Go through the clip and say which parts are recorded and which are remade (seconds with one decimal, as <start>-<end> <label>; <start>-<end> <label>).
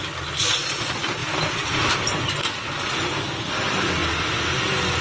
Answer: 0.0-1.2 recorded; 1.2-1.8 remade; 1.8-5.0 recorded